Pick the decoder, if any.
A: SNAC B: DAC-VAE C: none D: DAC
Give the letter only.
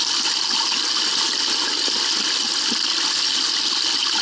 C